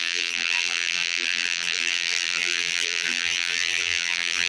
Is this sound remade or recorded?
remade